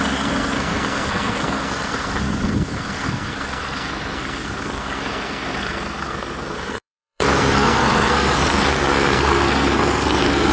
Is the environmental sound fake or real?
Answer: fake